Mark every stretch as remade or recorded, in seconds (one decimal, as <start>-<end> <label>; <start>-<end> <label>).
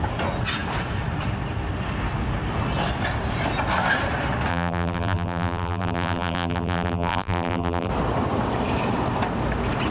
0.0-4.5 recorded; 4.5-7.9 remade; 7.9-9.9 recorded